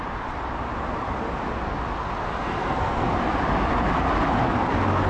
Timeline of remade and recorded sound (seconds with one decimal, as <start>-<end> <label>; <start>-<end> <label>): 0.0-2.4 recorded; 2.4-3.1 remade; 3.1-5.1 recorded